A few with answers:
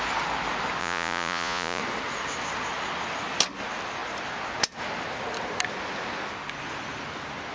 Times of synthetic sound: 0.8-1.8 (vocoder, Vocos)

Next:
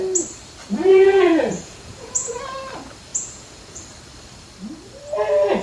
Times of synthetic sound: 0.9-2.4 (vocoder, Vocos); 3.1-3.8

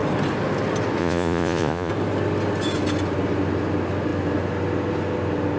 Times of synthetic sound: 1.0-1.9 (vocoder, Vocos)